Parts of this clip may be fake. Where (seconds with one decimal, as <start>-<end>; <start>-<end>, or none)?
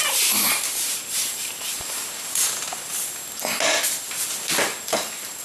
0.0-2.9; 4.7-5.4